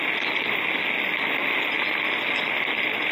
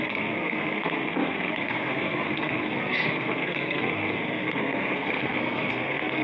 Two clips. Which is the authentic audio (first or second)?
first